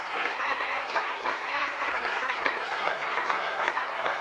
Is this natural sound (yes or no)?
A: no